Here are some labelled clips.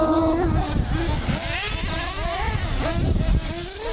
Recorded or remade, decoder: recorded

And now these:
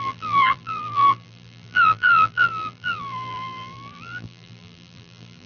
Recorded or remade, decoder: remade, vocoder, BigVGAN v2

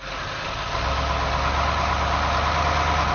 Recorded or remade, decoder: recorded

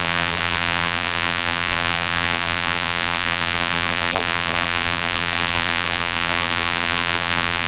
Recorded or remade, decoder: remade, vocoder, BigVGAN v2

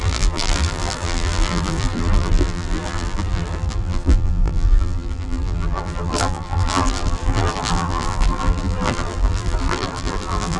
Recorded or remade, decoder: remade, vocoder, BigVGAN v2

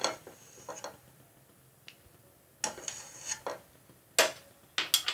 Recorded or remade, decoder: recorded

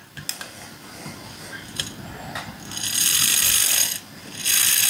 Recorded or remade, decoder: recorded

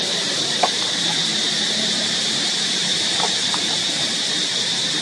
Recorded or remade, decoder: remade, vocoder, BigVGAN v2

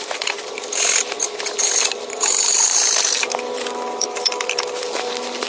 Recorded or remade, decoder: remade, vocoder, BigVGAN v2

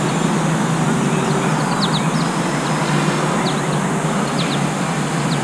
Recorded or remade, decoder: recorded